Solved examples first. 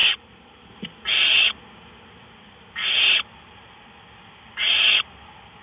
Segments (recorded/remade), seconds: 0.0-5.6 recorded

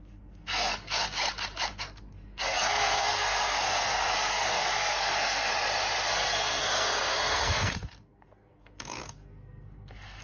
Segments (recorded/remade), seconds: 0.0-1.2 remade; 1.2-1.7 recorded; 1.7-5.5 remade; 5.5-6.1 recorded; 6.1-10.2 remade

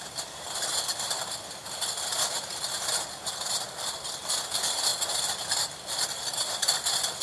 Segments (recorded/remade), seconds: 0.0-7.2 recorded

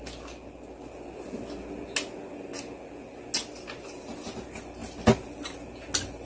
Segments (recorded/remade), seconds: 0.0-6.3 recorded

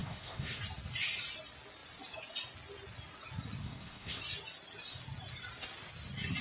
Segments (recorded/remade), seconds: 0.0-0.6 remade; 0.6-3.6 recorded; 3.6-4.2 remade; 4.2-6.4 recorded

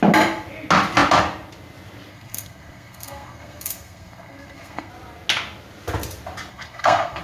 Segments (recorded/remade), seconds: 0.0-2.1 recorded; 2.1-4.9 remade; 4.9-6.5 recorded; 6.5-7.2 remade

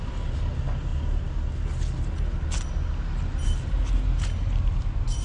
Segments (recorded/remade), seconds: 0.0-5.2 recorded